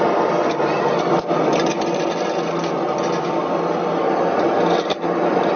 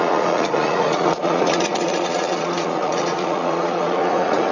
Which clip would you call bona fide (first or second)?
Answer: first